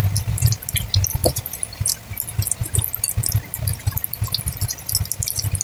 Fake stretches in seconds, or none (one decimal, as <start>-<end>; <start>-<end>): 1.2-1.9